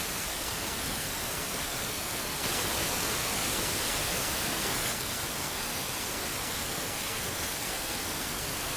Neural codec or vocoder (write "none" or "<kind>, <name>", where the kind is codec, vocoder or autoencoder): codec, SNAC